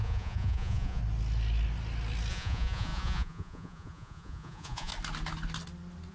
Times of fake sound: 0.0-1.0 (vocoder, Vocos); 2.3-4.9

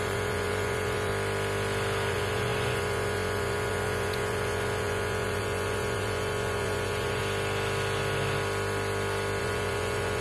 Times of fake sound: 0.0-1.1 (vocoder, Vocos); 2.1-7.2; 9.4-10.2

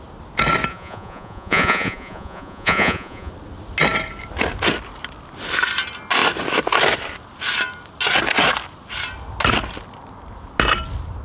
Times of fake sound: 0.7-3.3 (vocoder, Vocos)

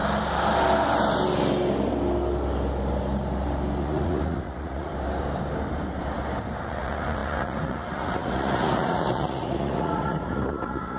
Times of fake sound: 3.8-4.9 (vocoder, Vocos); 6.6-11.0

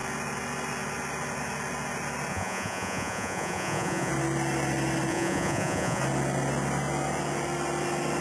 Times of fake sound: 2.3-4.1 (vocoder, Vocos); 5.1-6.0